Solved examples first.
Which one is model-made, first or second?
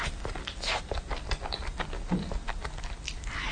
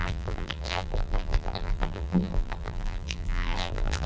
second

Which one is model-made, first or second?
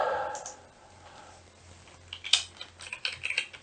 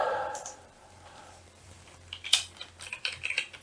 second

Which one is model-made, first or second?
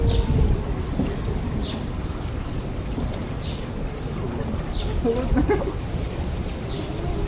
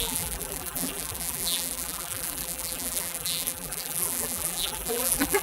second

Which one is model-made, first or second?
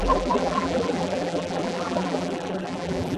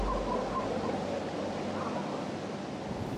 first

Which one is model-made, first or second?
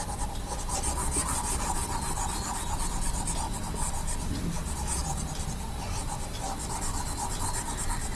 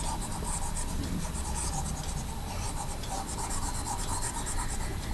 second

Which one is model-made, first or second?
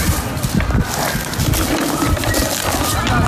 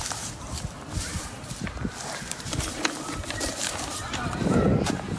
second